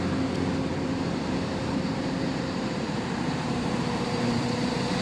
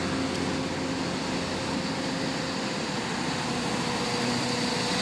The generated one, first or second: first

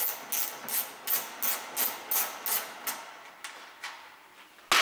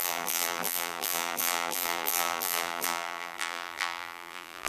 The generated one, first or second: second